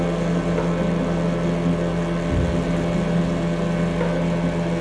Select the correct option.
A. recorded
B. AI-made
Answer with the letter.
A